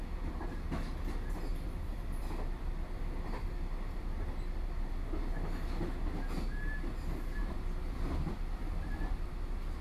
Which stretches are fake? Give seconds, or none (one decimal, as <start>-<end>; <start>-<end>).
1.5-4.9; 7.4-9.3